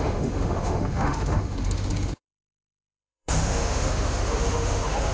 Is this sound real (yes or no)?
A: no